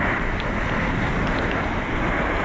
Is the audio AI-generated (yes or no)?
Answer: no